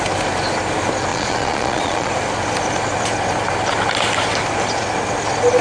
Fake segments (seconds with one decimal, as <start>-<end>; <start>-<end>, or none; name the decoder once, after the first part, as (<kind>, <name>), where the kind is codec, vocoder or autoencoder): 1.1-2.1 (vocoder, Vocos)